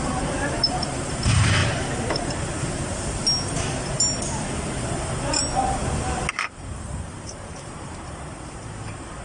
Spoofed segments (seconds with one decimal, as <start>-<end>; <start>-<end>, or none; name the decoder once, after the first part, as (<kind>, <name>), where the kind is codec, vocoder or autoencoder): 0.0-1.6 (vocoder, BigVGAN v2); 6.3-9.2